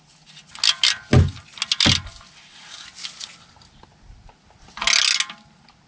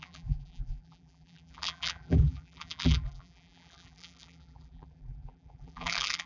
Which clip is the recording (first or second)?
first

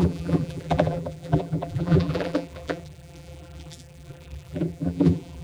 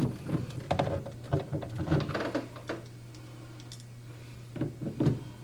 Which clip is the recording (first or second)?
second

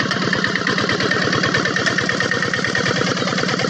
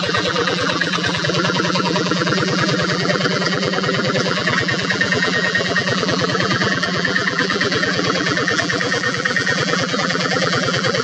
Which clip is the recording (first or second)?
first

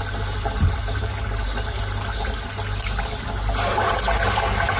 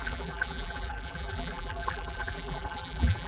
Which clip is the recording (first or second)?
first